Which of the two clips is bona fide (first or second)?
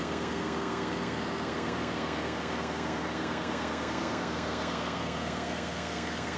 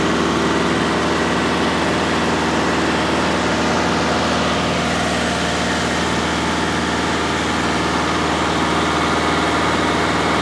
second